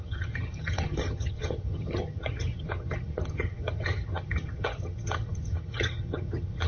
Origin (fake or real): fake